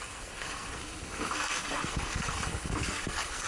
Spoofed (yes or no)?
yes